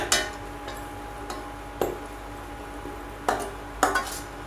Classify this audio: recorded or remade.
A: recorded